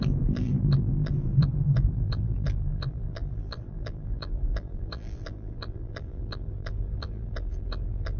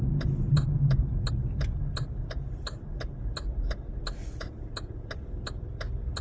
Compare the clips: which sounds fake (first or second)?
first